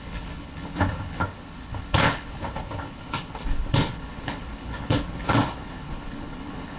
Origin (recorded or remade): remade